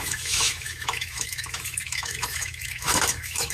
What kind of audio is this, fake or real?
fake